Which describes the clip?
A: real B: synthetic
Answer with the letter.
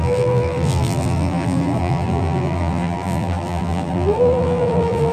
B